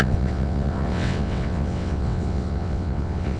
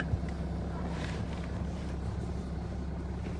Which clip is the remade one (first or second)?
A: first